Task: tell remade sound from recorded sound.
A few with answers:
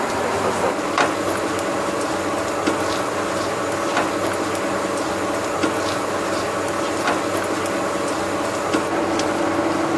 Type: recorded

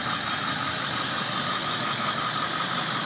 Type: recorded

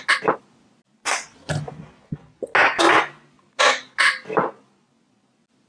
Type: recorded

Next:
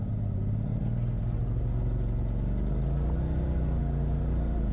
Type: recorded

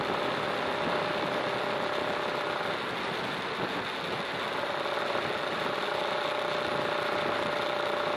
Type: recorded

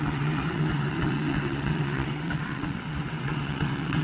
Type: remade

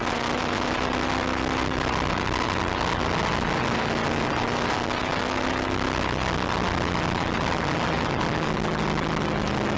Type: recorded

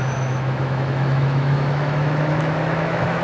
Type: remade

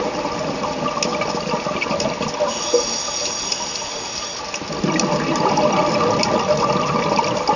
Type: recorded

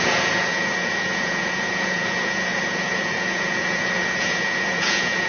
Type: remade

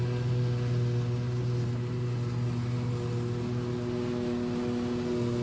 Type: recorded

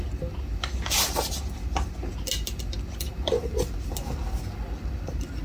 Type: recorded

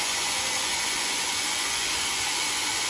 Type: remade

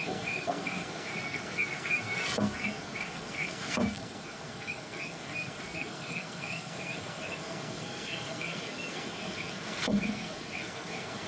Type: remade